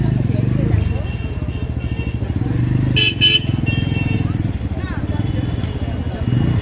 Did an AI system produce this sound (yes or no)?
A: no